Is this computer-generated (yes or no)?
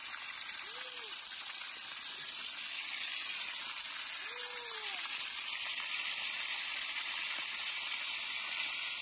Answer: no